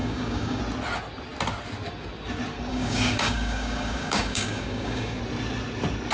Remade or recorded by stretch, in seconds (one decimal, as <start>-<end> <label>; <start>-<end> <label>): 0.0-0.6 remade; 0.6-2.7 recorded; 2.7-5.2 remade; 5.2-6.1 recorded